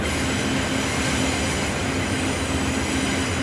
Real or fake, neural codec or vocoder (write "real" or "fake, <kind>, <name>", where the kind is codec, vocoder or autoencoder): real